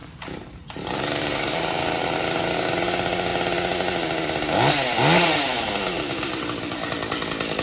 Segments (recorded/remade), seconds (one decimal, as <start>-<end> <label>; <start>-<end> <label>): 0.0-1.7 remade; 1.7-7.6 recorded